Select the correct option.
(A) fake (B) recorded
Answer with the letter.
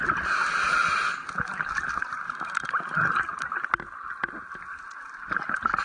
B